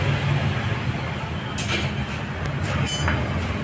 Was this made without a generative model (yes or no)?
yes